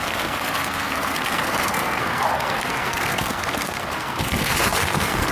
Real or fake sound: fake